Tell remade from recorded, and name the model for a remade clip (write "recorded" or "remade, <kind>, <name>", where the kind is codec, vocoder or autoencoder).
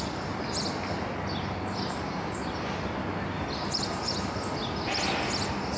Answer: recorded